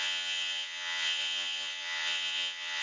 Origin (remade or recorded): remade